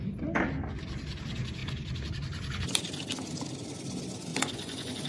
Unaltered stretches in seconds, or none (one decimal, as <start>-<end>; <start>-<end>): 0.0-4.3

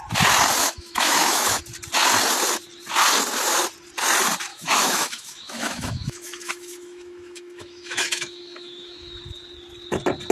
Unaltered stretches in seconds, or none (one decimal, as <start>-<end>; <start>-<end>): 0.0-0.6; 1.6-4.5; 9.2-10.3